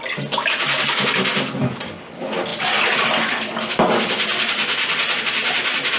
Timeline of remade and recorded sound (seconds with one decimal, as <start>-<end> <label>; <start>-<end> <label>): 0.0-6.0 recorded